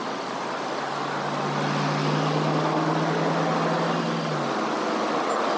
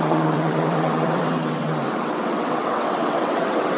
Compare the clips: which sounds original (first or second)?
first